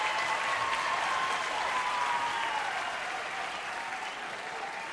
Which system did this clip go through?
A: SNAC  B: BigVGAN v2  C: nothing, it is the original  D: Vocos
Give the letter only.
C